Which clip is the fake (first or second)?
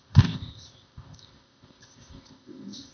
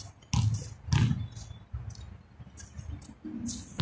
first